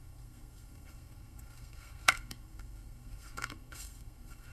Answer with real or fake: fake